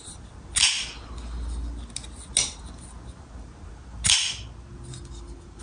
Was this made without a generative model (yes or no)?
yes